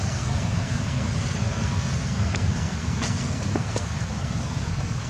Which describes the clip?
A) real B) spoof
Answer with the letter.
B